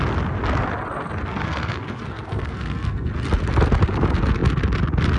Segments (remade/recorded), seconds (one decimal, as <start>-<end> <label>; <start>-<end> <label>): 0.0-1.3 recorded; 1.3-3.1 remade; 3.1-5.2 recorded